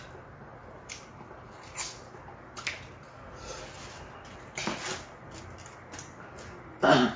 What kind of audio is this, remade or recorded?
recorded